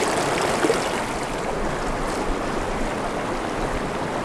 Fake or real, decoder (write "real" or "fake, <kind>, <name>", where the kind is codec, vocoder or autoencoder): real